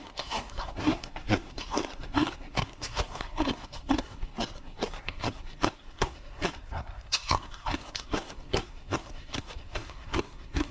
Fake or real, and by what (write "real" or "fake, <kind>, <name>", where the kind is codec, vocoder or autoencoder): fake, codec, SNAC